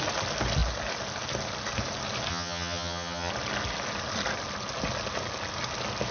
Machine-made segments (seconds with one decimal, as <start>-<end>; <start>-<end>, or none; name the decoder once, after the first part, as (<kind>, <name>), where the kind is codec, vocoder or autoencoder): 2.3-3.3 (vocoder, HiFi-GAN)